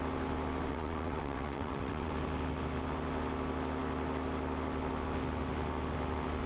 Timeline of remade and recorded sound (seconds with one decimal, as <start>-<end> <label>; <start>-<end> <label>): 0.0-0.7 recorded; 0.7-2.1 remade; 2.1-6.5 recorded